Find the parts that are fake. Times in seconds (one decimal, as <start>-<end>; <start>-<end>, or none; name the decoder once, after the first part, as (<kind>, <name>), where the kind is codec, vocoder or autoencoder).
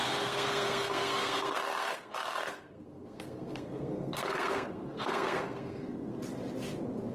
0.0-6.1 (codec, SNAC)